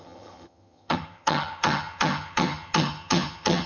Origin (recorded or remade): remade